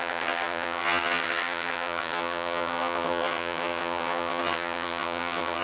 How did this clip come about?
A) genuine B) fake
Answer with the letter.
B